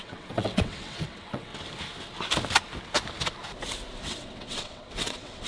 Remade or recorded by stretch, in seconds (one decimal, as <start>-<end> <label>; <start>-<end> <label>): 0.0-1.5 remade; 1.5-4.0 recorded; 4.0-5.5 remade

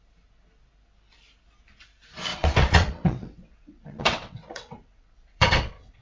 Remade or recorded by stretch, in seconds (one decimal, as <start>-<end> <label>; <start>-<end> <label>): 0.0-2.3 recorded; 2.3-6.0 remade

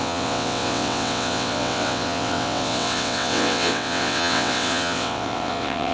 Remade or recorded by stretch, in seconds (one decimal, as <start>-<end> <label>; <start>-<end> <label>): 0.0-5.9 remade

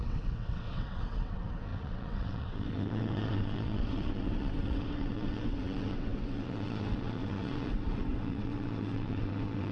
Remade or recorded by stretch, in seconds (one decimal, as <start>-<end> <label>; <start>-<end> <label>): 0.0-9.7 remade

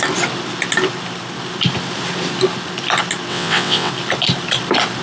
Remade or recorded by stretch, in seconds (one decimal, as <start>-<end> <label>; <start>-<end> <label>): 0.0-3.3 recorded; 3.3-3.9 remade; 3.9-5.0 recorded

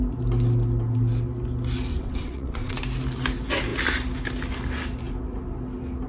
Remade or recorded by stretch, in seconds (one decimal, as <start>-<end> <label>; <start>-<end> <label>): 0.0-1.9 recorded; 1.9-2.8 remade; 2.8-6.1 recorded